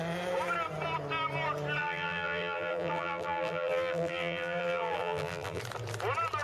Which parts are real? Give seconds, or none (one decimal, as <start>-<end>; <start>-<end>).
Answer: 0.0-1.8; 5.6-6.4